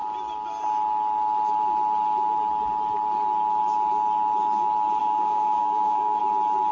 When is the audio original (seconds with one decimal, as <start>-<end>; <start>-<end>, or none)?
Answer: 0.0-5.0; 6.2-6.7